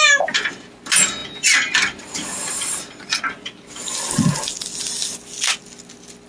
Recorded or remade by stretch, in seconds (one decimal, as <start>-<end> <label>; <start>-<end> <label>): 0.0-6.3 recorded

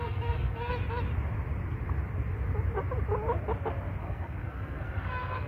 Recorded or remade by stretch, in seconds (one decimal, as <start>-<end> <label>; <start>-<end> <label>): 0.0-0.7 remade; 0.7-4.0 recorded; 4.0-5.5 remade